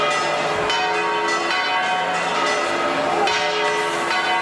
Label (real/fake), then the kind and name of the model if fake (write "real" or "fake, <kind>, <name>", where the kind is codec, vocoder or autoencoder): real